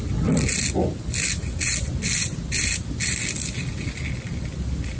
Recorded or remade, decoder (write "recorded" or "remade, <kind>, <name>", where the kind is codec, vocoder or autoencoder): recorded